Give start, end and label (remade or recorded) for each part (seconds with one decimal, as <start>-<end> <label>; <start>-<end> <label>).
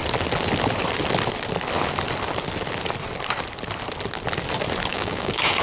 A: 0.0-4.9 recorded; 4.9-5.6 remade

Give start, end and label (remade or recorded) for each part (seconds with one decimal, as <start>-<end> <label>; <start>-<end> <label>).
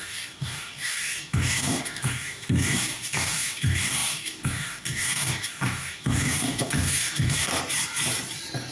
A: 0.0-7.5 remade; 7.5-8.7 recorded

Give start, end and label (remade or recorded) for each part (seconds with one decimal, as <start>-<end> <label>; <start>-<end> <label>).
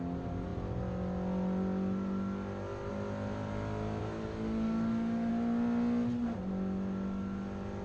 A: 0.0-4.0 recorded; 4.0-5.3 remade; 5.3-7.8 recorded